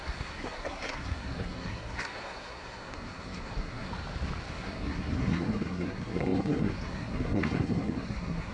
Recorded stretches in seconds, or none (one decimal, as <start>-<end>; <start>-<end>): 3.9-4.5